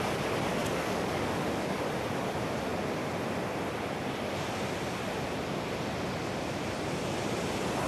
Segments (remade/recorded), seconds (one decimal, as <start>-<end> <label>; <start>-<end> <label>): 0.0-0.6 recorded; 0.6-1.8 remade; 1.8-7.9 recorded